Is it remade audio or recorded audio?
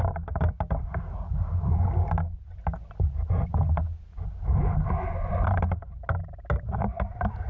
recorded